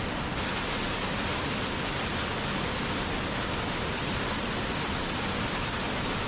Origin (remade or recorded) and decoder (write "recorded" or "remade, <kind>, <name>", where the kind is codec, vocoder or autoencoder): recorded